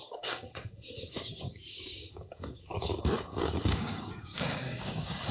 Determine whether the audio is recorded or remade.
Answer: remade